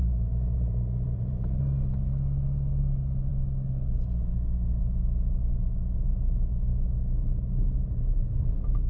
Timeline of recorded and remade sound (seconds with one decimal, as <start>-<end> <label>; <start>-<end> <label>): 0.0-1.6 remade; 1.6-8.9 recorded

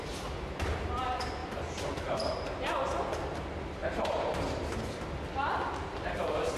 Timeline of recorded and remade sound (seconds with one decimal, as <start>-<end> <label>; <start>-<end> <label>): 0.0-3.8 recorded; 3.8-4.8 remade; 4.8-6.6 recorded

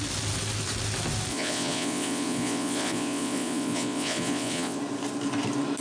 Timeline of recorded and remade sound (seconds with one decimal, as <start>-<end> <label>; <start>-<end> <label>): 0.0-1.3 recorded; 1.3-4.8 remade; 4.8-5.8 recorded

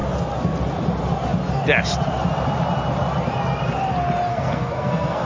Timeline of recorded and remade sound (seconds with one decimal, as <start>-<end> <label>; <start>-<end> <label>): 0.0-4.3 recorded; 4.3-5.3 remade

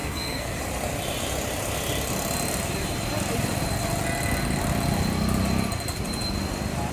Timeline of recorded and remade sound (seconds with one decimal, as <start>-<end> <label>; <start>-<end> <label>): 0.0-0.6 remade; 0.6-6.9 recorded

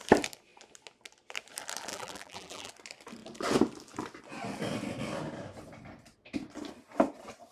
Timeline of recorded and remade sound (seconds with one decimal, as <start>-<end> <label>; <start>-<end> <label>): 0.0-1.9 recorded; 1.9-2.7 remade; 2.7-7.5 recorded

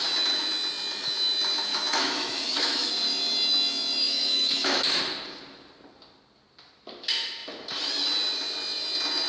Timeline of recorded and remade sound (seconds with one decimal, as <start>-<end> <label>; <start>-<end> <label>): 0.0-1.7 recorded; 1.7-2.9 remade; 2.9-4.0 recorded; 4.0-5.0 remade; 5.0-9.3 recorded

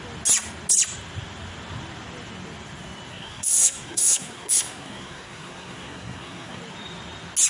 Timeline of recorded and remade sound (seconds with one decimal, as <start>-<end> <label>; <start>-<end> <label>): 0.0-3.1 recorded; 3.1-6.6 remade; 6.6-7.5 recorded